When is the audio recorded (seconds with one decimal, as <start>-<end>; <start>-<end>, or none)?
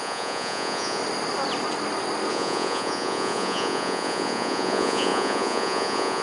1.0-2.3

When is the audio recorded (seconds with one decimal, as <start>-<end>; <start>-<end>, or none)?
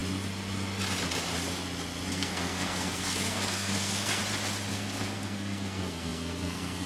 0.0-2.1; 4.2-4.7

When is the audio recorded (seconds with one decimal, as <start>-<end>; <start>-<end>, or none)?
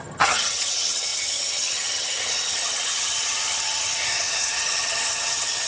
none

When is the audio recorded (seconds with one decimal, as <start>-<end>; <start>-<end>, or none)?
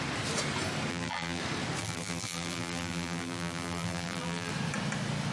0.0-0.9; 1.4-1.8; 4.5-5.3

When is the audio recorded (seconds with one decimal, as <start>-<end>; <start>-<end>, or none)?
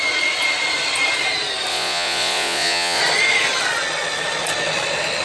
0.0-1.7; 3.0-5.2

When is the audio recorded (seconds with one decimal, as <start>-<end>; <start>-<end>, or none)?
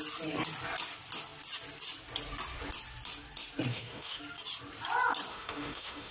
0.0-3.7; 4.2-5.3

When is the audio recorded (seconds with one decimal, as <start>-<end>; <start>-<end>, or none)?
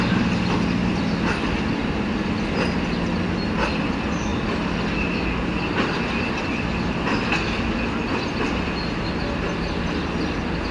0.0-10.7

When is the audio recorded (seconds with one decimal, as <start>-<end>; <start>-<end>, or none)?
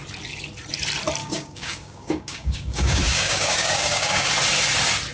0.0-1.2; 4.3-5.1